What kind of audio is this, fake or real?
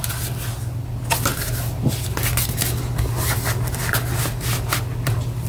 real